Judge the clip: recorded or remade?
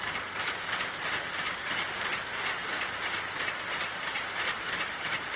remade